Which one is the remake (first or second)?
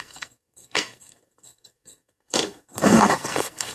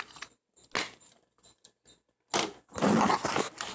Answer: first